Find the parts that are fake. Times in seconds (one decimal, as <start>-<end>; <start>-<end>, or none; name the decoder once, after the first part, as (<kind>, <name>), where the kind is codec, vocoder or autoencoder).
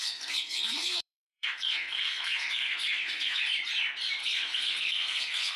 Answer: 0.0-3.4 (codec, SNAC); 4.2-5.6